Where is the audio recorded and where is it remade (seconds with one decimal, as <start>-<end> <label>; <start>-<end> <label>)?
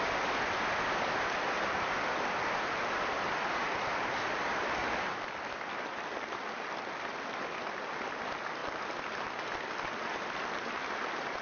0.0-8.6 remade; 8.6-9.1 recorded; 9.1-11.4 remade